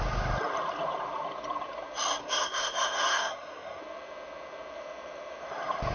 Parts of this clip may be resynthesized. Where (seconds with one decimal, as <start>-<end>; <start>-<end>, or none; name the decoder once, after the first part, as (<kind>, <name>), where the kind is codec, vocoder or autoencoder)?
2.2-3.8 (codec, SNAC)